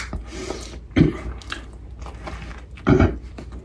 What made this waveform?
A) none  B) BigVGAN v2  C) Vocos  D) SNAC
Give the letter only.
A